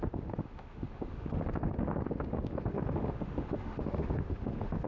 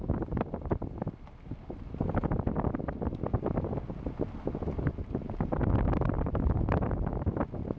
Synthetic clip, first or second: first